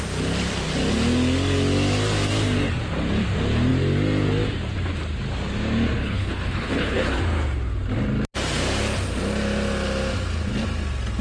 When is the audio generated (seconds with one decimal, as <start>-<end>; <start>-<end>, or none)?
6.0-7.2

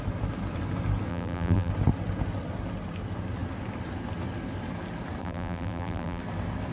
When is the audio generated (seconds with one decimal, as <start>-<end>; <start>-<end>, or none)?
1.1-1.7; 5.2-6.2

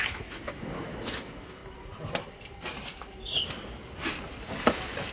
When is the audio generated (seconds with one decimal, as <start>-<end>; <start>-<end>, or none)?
0.0-1.6